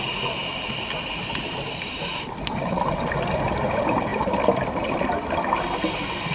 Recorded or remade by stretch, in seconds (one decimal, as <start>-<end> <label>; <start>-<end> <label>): 0.0-6.3 recorded